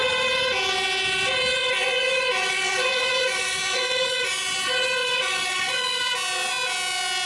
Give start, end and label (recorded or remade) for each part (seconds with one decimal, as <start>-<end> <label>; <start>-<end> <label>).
0.0-1.6 recorded; 1.6-4.3 remade; 4.3-5.0 recorded; 5.0-6.0 remade; 6.0-7.3 recorded